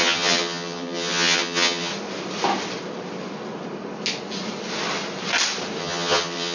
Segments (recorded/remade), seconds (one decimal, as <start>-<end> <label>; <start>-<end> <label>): 0.0-1.9 remade; 1.9-5.8 recorded; 5.8-6.5 remade